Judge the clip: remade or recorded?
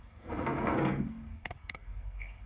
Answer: remade